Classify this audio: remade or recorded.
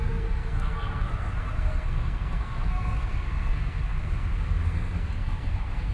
remade